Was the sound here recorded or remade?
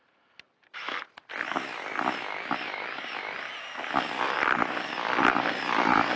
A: recorded